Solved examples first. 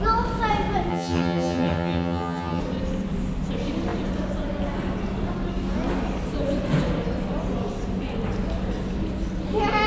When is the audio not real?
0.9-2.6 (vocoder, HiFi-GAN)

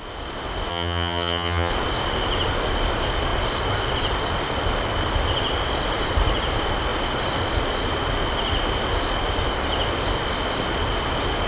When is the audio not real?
0.7-1.7 (vocoder, HiFi-GAN)

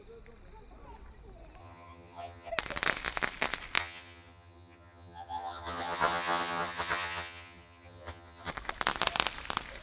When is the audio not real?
1.6-2.5 (vocoder, HiFi-GAN); 3.8-8.5

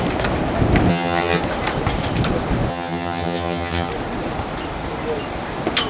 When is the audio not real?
0.9-1.4 (vocoder, HiFi-GAN); 2.7-3.9

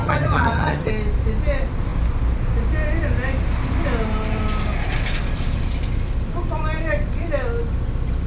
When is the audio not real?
0.0-0.9 (vocoder, HiFi-GAN)